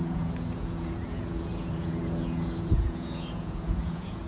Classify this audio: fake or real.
fake